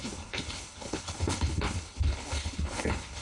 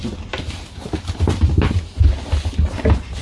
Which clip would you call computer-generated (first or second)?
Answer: first